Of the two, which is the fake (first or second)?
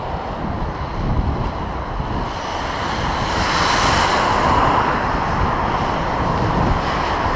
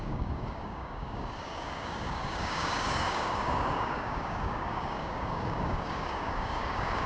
second